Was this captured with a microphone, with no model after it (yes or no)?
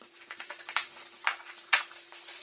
no